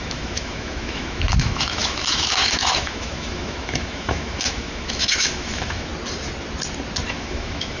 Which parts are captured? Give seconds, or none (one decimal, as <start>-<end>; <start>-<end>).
5.9-7.1